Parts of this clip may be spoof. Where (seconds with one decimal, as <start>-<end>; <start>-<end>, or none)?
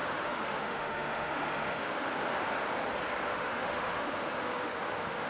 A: 0.0-2.1; 3.3-5.3